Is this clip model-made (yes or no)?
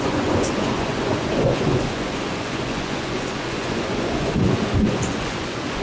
yes